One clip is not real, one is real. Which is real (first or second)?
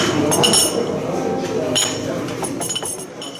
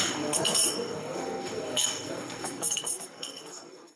first